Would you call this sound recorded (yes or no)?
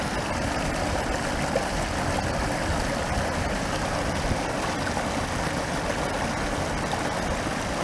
yes